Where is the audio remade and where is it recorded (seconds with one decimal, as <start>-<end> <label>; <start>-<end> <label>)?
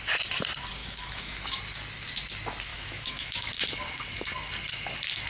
0.0-0.8 recorded; 0.8-1.6 remade; 1.6-2.7 recorded; 2.7-3.5 remade; 3.5-5.3 recorded